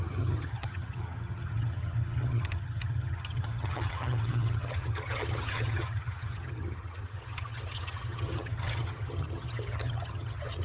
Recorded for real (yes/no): no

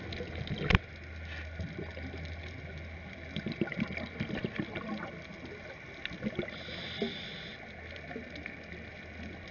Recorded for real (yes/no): yes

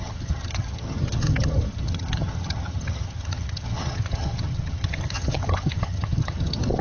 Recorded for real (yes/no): no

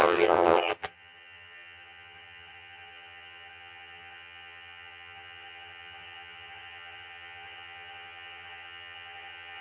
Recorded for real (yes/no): no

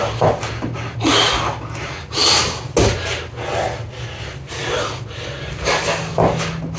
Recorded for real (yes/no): yes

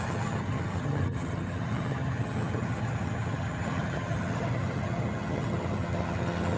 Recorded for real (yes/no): no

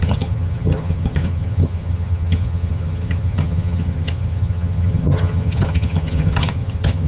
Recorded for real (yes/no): no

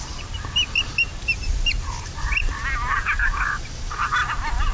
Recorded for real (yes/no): yes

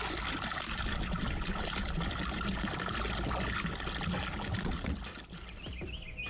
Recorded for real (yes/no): yes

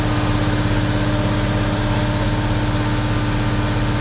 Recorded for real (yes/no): yes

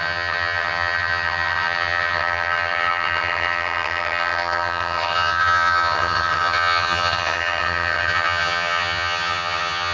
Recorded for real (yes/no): no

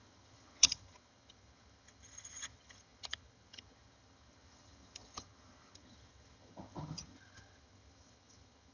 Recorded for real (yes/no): no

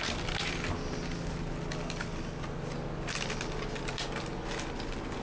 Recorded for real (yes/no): yes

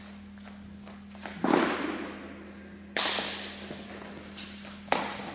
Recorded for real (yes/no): yes